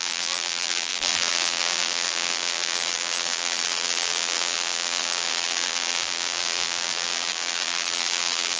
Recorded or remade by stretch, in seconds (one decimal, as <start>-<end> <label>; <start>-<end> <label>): 0.0-8.6 remade